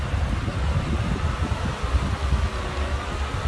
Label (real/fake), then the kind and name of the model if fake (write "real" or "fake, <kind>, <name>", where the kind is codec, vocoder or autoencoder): real